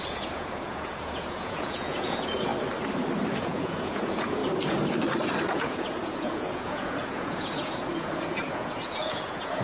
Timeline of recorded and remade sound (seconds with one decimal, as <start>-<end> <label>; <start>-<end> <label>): 0.0-2.5 remade; 2.5-3.3 recorded; 3.3-4.4 remade; 4.4-5.5 recorded; 5.5-9.6 remade